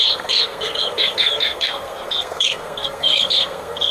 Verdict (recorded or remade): remade